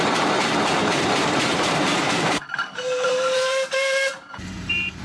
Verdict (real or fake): fake